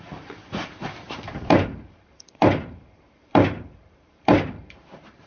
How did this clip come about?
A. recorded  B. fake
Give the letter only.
B